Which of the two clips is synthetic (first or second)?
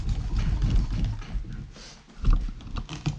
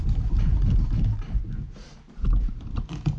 second